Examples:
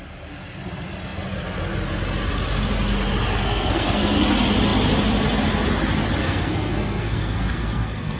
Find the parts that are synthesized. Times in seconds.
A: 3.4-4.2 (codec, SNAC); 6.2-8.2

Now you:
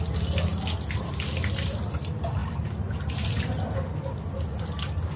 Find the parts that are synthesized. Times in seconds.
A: none

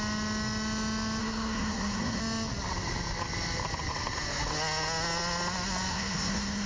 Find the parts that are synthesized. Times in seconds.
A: 1.2-2.2 (codec, SNAC); 5.9-6.7

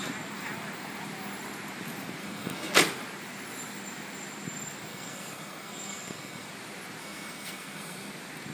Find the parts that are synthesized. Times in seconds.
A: 2.2-2.7 (codec, SNAC); 4.9-6.5; 7.0-8.1

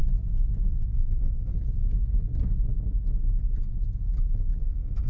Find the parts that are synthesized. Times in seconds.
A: 0.9-1.5 (codec, SNAC); 4.6-5.1

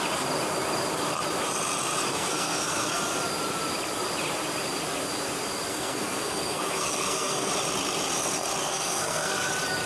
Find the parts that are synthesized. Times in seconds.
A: 2.1-3.0 (codec, SNAC); 5.7-7.5; 8.6-9.5

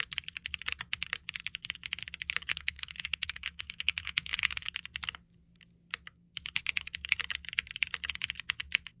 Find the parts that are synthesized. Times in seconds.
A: 2.5-4.7 (codec, SNAC)